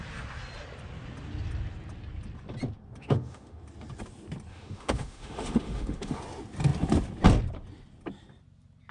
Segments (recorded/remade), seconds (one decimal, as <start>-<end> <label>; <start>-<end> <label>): 0.0-3.0 recorded; 3.0-3.6 remade; 3.6-4.5 recorded; 4.5-6.2 remade; 6.2-8.9 recorded